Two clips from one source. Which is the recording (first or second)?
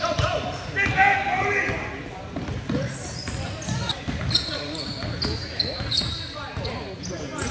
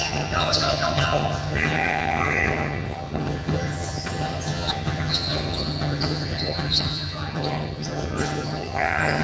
first